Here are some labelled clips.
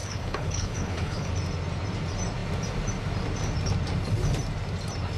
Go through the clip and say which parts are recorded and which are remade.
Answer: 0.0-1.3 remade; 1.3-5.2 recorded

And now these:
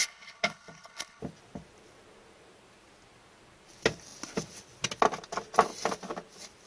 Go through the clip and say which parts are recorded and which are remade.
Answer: 0.0-1.2 remade; 1.2-6.7 recorded

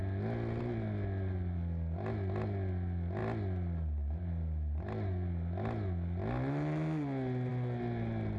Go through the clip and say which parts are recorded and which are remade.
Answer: 0.0-8.4 recorded